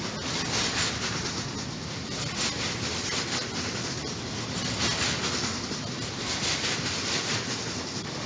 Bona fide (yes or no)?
yes